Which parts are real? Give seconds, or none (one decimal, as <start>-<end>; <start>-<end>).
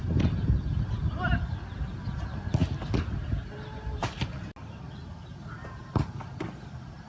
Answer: 0.0-7.1